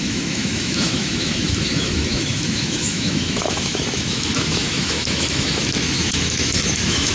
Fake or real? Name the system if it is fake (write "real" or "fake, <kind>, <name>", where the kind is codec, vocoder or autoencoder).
fake, autoencoder, DAC-VAE